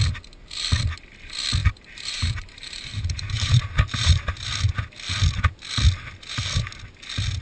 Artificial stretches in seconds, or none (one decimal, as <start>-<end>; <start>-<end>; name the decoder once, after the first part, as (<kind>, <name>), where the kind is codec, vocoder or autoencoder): 1.6-4.2 (vocoder, BigVGAN v2)